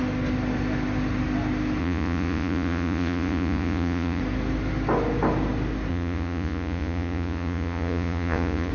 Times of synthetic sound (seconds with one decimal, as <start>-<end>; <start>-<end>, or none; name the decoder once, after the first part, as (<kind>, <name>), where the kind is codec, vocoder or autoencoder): 1.8-4.2 (vocoder, Vocos); 5.9-8.7